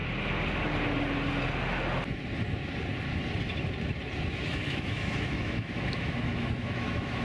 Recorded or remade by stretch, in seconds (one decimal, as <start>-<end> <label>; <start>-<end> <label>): 0.0-4.3 recorded; 4.3-7.2 remade